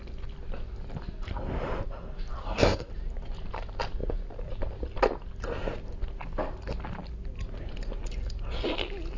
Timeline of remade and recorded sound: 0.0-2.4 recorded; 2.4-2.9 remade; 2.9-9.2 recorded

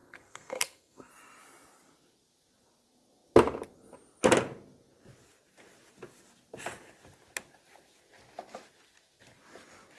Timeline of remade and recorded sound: 0.0-1.1 remade; 1.1-10.0 recorded

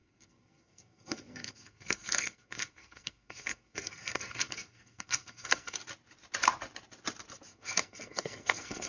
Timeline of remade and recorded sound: 0.0-5.8 remade; 5.8-7.5 recorded; 7.5-8.9 remade